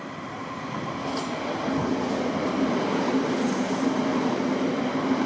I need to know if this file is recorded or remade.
recorded